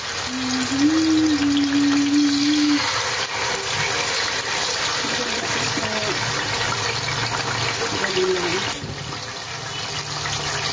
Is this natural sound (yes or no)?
yes